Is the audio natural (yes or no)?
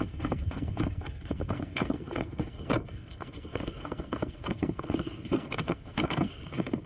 no